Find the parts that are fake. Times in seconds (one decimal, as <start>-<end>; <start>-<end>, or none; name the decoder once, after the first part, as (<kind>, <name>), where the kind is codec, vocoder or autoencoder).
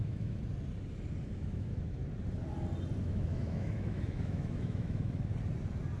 0.0-0.4 (autoencoder, DAC-VAE); 1.2-2.0; 3.0-5.3